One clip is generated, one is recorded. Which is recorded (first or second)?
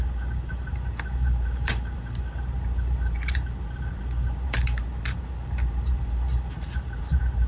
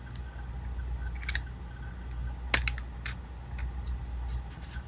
second